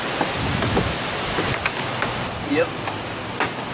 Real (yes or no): yes